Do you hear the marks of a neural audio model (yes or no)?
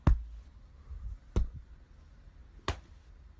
no